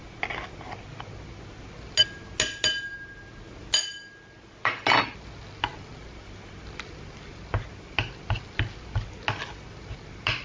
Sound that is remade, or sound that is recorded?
recorded